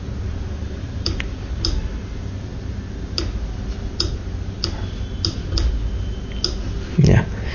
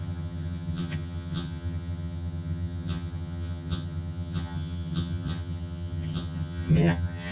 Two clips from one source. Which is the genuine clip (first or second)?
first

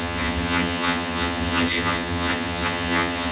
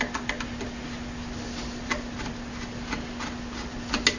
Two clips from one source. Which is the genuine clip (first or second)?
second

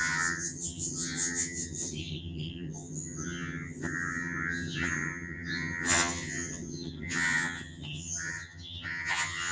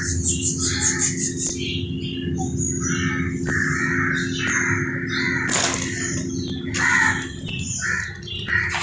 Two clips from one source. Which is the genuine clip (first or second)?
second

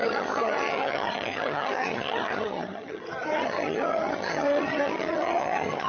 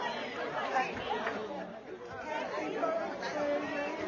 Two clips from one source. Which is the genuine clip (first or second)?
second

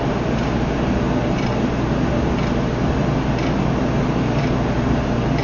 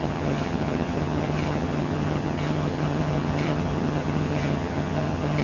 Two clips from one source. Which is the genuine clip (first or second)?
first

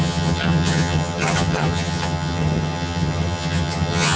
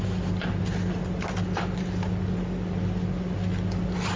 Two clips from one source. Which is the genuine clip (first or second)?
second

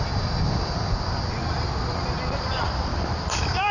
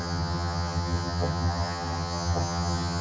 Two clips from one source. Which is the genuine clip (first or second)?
first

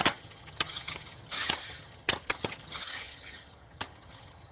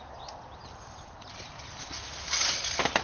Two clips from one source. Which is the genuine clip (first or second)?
second